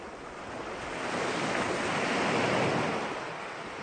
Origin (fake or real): real